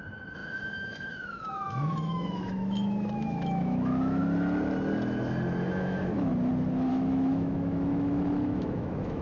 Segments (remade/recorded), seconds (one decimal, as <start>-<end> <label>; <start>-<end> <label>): 0.0-4.2 remade; 4.2-5.8 recorded; 5.8-6.3 remade; 6.3-6.9 recorded; 6.9-9.2 remade